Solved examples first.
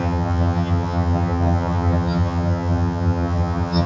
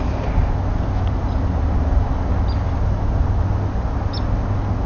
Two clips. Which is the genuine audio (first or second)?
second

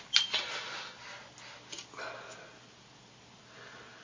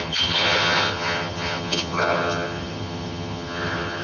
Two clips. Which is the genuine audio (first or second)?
first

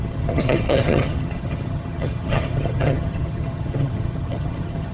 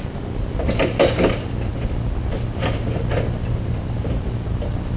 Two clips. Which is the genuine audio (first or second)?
second